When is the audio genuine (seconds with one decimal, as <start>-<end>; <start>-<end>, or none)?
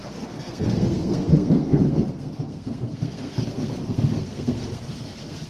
none